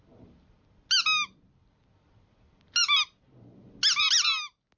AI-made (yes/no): no